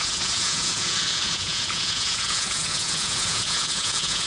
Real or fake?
fake